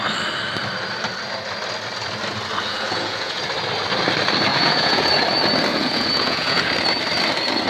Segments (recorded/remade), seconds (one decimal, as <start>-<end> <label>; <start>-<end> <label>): 0.0-2.7 recorded; 2.7-3.4 remade; 3.4-4.5 recorded; 4.5-5.1 remade; 5.1-5.7 recorded; 5.7-6.6 remade; 6.6-7.7 recorded